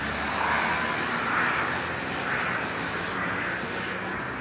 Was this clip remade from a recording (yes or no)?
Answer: no